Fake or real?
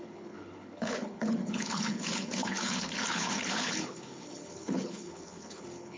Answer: fake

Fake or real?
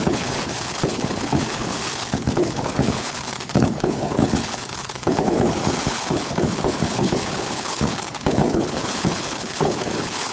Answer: fake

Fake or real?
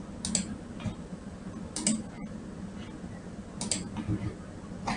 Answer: real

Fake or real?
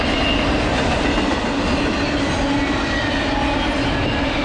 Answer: real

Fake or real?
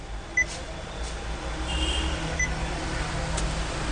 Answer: real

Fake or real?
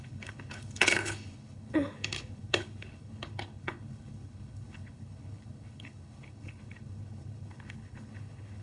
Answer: fake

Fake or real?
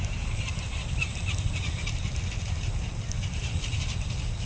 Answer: real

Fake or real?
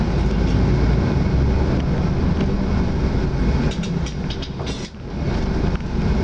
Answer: real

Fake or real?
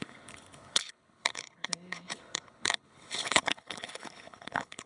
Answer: fake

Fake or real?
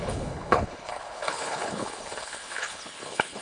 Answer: fake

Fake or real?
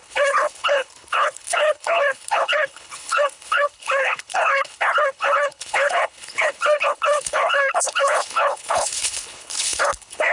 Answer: fake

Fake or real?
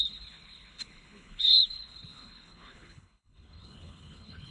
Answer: fake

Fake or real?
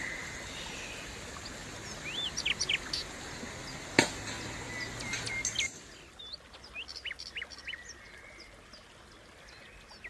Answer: real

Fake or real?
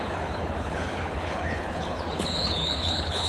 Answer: fake